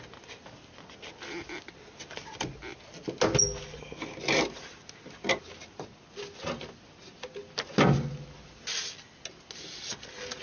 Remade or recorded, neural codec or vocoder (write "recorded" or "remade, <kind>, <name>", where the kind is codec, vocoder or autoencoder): recorded